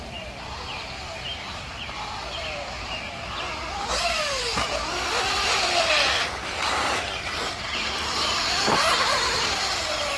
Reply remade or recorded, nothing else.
remade